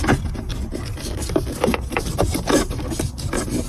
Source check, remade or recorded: recorded